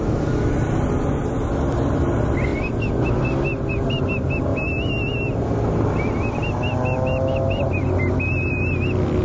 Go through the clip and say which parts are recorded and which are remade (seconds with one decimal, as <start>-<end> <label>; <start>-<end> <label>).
0.0-9.2 recorded